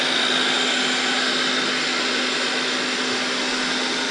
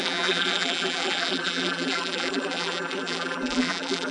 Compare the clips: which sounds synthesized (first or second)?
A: second